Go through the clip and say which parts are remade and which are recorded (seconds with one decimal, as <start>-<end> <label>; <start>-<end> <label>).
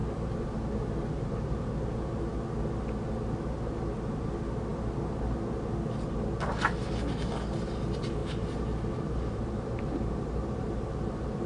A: 0.0-1.7 remade; 1.7-8.2 recorded; 8.2-11.5 remade